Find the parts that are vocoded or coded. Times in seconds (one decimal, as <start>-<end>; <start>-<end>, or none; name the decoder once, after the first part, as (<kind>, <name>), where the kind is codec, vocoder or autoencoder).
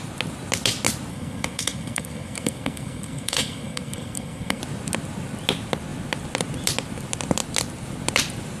1.1-4.6 (codec, SNAC)